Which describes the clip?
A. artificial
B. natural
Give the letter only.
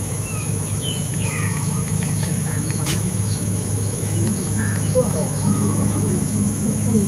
A